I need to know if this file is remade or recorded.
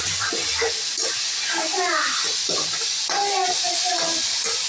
recorded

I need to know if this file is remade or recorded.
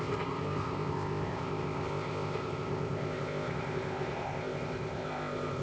remade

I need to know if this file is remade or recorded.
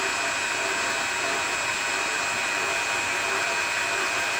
recorded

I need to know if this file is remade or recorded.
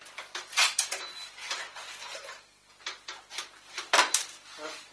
recorded